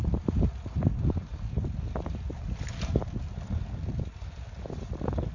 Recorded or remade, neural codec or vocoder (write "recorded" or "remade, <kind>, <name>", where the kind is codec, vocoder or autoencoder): recorded